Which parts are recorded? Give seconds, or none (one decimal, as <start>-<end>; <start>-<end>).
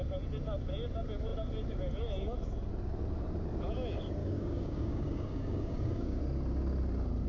0.0-4.2; 6.2-7.3